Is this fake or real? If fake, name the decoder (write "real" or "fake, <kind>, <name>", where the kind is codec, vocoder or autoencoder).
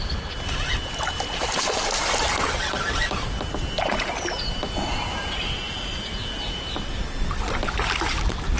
real